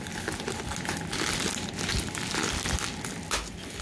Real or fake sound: real